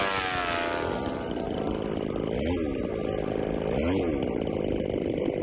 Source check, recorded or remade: recorded